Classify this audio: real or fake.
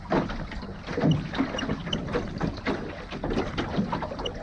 real